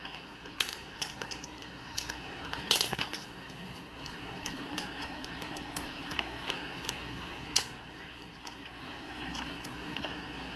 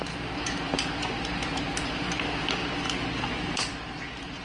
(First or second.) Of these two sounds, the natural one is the second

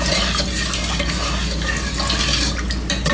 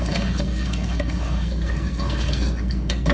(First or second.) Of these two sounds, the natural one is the first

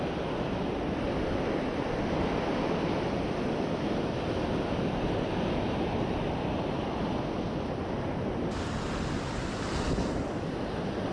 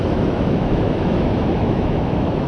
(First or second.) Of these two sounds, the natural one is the first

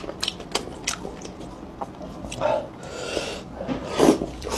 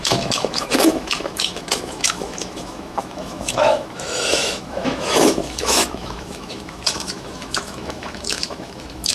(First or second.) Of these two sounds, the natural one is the first